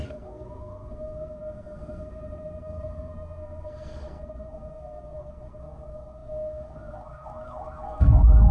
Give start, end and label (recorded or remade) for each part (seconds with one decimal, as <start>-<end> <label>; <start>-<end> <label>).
0.0-8.5 remade